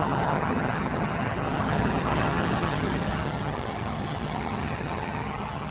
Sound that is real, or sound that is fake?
fake